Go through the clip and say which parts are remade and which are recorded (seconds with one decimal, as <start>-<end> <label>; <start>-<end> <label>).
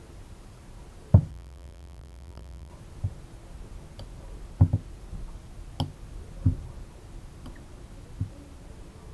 0.0-1.3 recorded; 1.3-2.7 remade; 2.7-9.1 recorded